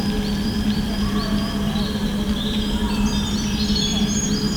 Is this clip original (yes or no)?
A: yes